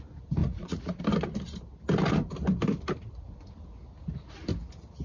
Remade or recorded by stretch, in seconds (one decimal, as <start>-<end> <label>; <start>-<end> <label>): 0.0-0.4 recorded; 0.4-1.0 remade; 1.0-5.0 recorded